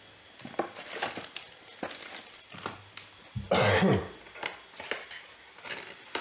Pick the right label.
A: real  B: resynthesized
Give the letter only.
A